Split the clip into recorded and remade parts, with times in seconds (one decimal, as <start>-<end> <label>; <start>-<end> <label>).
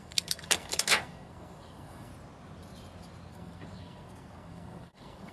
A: 0.0-2.1 remade; 2.1-3.3 recorded; 3.3-5.3 remade